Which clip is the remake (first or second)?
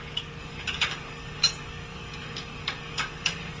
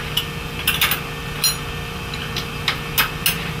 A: first